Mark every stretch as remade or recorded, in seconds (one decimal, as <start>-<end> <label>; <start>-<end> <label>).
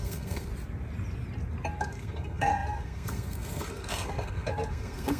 0.0-0.5 remade; 0.5-1.8 recorded; 1.8-5.2 remade